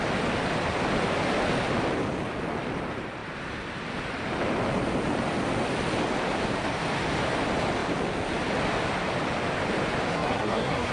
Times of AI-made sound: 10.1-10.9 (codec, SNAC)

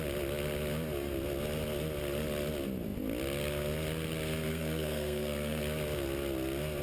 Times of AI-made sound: 4.5-5.6 (codec, SNAC)

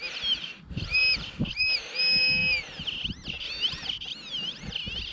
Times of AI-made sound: none

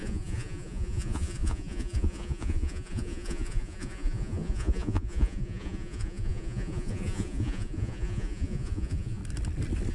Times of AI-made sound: 0.0-9.2 (vocoder, Vocos)

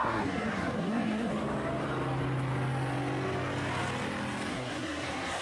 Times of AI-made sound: 0.0-1.3 (codec, SNAC); 4.5-5.4

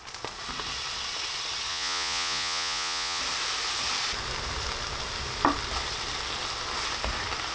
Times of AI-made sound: 1.7-3.2 (vocoder, Vocos)

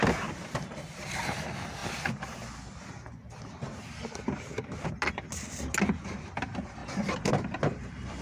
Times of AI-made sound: 0.0-1.8 (vocoder, BigVGAN v2); 6.2-6.8; 7.3-8.2

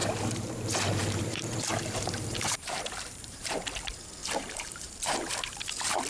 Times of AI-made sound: 0.0-0.6 (vocoder, BigVGAN v2); 1.0-3.5; 4.2-5.3